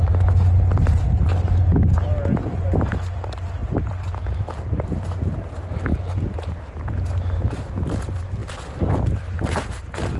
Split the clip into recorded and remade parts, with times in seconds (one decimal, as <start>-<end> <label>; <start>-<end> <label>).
0.0-10.2 recorded

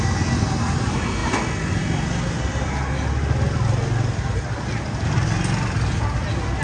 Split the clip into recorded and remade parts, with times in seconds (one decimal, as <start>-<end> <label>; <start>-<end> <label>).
0.0-6.6 recorded

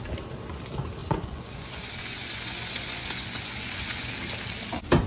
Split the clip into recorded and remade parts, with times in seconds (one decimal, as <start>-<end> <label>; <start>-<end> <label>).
0.0-1.0 recorded; 1.0-4.1 remade; 4.1-5.1 recorded

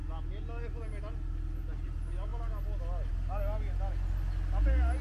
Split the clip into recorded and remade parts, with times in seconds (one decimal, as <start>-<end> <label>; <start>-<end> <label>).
0.0-5.0 recorded